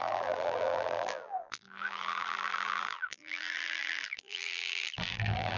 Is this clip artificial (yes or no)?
yes